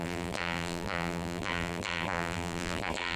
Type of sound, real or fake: fake